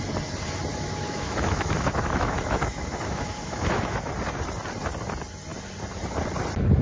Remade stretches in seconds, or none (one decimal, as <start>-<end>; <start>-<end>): 0.7-4.1